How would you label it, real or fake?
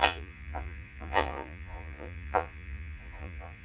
fake